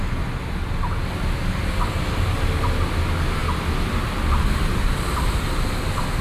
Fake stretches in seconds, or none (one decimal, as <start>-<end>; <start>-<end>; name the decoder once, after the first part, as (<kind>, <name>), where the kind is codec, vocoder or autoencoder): none